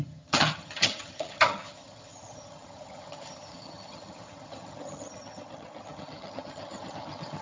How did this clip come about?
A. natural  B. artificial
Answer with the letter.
B